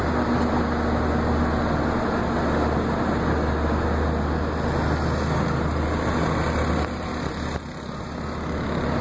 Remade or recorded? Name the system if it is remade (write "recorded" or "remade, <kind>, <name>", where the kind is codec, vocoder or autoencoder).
recorded